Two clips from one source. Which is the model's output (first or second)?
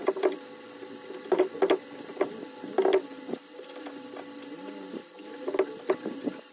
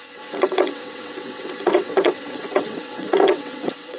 second